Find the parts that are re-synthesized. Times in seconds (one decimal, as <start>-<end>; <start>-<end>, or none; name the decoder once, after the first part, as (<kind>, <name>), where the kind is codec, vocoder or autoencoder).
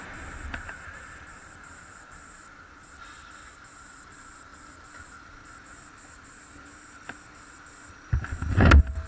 none